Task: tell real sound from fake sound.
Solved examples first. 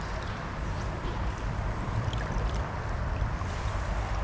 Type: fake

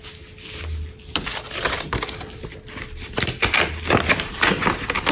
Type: real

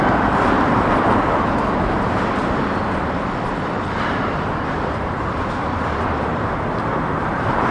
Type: fake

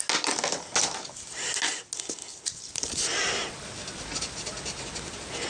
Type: real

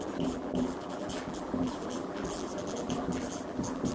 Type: fake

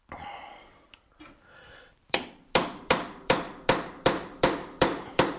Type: fake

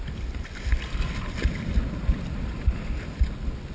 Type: real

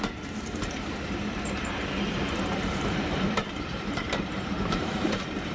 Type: fake